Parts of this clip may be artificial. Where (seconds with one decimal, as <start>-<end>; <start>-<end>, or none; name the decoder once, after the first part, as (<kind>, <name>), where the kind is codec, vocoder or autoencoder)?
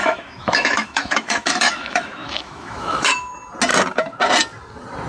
0.0-3.1 (autoencoder, DAC-VAE)